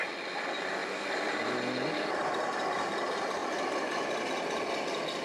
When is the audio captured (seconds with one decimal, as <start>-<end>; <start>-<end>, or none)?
0.0-0.8; 1.3-3.4; 4.7-5.2